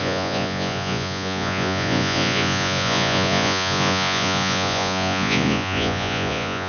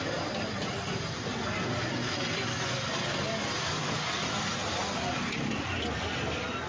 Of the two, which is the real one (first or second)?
second